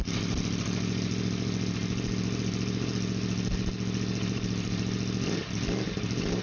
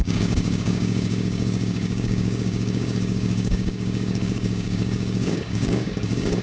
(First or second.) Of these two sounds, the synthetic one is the second